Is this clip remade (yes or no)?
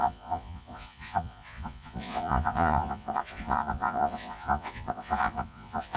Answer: yes